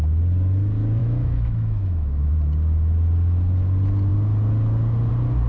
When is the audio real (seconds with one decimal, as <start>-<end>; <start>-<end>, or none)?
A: 0.0-1.0; 2.3-5.5